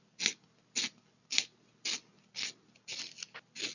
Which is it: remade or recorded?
recorded